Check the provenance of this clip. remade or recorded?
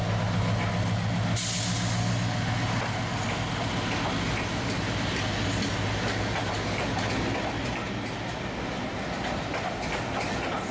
recorded